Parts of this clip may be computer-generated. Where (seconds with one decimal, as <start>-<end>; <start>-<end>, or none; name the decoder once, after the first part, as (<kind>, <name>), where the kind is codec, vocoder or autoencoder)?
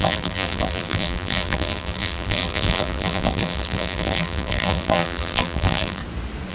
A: 0.0-6.0 (vocoder, BigVGAN v2)